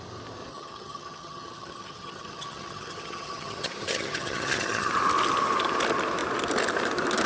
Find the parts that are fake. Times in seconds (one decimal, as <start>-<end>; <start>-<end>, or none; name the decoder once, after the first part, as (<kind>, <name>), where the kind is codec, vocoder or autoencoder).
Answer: 0.5-4.9 (vocoder, HiFi-GAN)